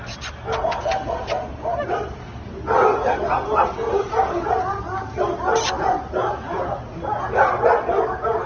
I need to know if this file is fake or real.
real